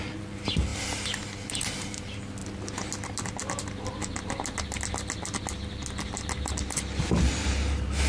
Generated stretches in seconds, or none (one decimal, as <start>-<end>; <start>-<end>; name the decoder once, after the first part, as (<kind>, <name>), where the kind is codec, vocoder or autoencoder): none